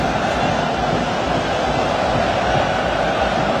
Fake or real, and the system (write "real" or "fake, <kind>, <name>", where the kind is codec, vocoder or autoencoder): real